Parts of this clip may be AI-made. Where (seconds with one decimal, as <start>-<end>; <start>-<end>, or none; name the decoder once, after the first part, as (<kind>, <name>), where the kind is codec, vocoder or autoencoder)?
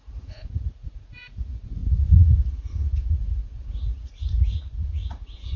0.0-5.6 (vocoder, Vocos)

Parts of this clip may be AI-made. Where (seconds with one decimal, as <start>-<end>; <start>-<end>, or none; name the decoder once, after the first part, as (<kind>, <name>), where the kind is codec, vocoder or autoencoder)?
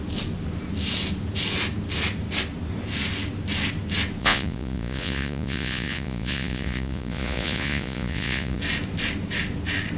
4.2-8.6 (vocoder, Vocos)